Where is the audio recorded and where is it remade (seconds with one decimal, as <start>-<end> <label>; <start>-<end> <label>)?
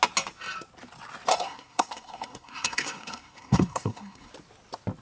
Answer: 0.0-1.3 recorded; 1.3-4.3 remade; 4.3-5.0 recorded